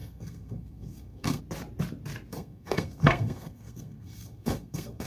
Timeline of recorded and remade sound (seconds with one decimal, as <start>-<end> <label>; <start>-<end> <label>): 0.0-1.4 remade; 1.4-2.3 recorded; 2.3-5.1 remade